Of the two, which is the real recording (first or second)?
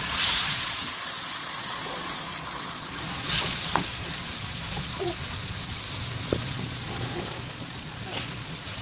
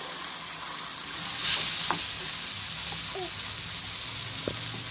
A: second